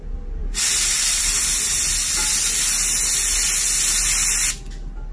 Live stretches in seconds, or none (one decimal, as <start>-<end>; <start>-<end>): 0.0-5.1